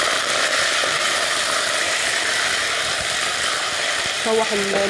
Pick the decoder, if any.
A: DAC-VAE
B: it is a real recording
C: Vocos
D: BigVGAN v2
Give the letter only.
B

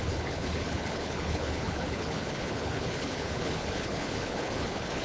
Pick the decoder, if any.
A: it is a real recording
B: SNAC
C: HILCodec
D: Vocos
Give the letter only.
C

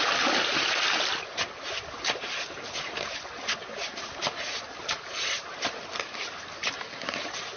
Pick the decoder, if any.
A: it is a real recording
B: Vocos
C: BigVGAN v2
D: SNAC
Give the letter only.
A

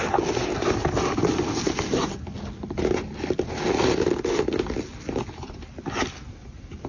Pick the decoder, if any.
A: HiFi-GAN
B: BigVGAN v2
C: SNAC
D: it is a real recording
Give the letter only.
D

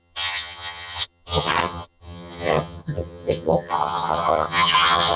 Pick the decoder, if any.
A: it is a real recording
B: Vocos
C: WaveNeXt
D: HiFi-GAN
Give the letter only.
D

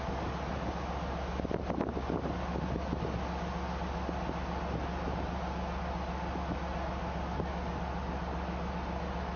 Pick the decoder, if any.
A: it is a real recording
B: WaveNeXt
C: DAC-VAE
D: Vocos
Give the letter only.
A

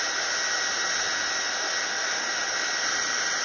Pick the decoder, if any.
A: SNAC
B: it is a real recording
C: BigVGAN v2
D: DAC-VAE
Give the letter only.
B